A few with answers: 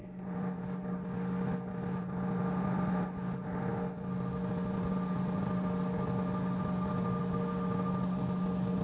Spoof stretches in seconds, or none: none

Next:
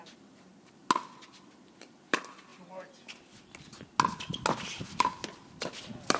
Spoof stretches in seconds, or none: none

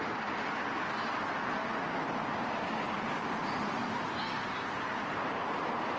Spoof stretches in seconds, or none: none

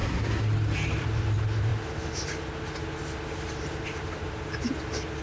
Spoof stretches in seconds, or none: 0.0-0.5 (codec, SNAC)

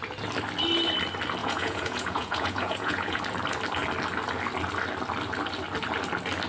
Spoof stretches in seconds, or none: 1.4-3.2 (vocoder, Vocos)